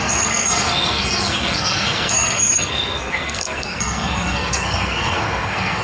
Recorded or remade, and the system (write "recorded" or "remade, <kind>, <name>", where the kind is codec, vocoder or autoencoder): remade, codec, SNAC